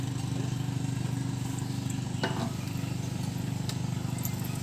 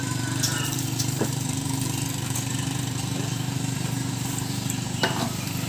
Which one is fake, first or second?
second